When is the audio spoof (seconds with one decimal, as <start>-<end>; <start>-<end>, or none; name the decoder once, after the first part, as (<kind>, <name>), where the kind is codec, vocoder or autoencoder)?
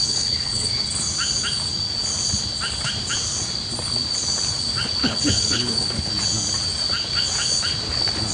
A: 0.0-0.7 (codec, HILCodec); 5.0-6.1